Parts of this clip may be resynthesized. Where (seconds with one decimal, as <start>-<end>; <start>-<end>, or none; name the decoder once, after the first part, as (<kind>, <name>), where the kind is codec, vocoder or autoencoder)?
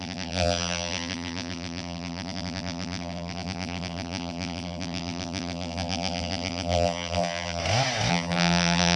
0.0-7.6 (vocoder, BigVGAN v2); 8.1-9.0